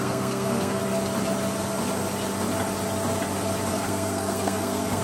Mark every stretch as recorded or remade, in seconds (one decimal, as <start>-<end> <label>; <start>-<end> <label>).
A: 0.0-0.8 remade; 0.8-3.7 recorded; 3.7-5.0 remade